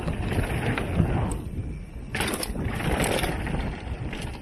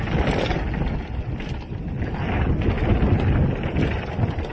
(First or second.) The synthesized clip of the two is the first